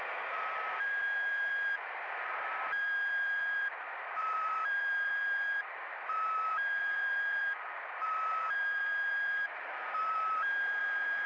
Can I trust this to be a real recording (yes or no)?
no